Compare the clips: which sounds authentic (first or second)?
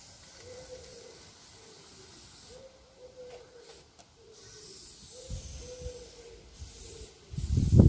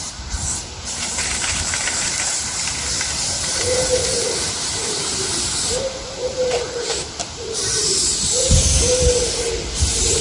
first